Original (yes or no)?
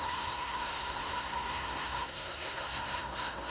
no